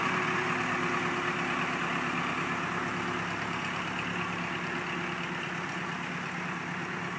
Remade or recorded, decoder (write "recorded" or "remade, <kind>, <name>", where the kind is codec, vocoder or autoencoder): recorded